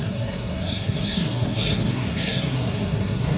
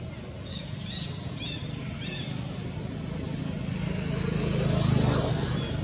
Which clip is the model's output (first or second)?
first